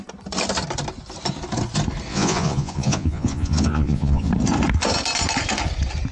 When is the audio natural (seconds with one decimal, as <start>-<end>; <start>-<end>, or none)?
0.0-2.1; 4.3-6.1